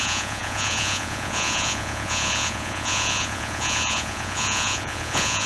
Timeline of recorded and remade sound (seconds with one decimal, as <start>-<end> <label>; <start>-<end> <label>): 0.0-5.5 remade